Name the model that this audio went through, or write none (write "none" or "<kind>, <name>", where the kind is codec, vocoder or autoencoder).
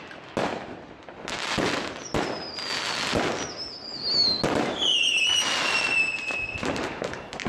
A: none